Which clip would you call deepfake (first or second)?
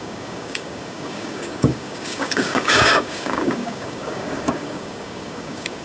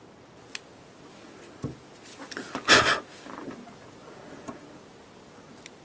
first